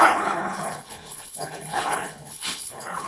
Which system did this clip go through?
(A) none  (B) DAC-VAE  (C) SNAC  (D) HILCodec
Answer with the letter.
D